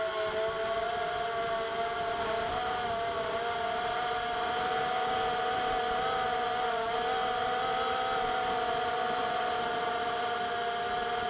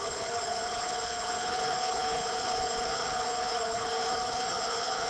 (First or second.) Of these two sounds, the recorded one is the first